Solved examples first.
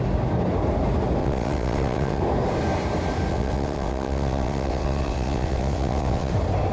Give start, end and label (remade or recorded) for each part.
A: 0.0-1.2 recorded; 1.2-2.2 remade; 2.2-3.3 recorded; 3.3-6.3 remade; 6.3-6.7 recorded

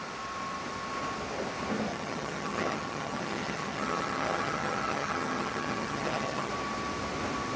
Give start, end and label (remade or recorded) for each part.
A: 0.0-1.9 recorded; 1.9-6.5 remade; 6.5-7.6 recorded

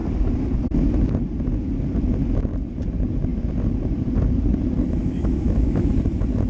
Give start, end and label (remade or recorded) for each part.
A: 0.0-5.0 recorded; 5.0-5.9 remade; 5.9-6.5 recorded

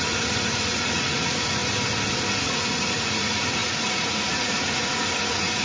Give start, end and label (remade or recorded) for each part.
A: 0.0-1.6 remade; 1.6-2.4 recorded; 2.4-5.6 remade